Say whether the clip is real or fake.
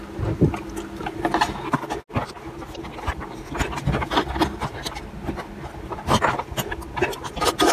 real